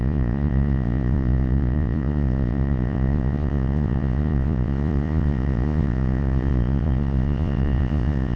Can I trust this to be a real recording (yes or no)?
no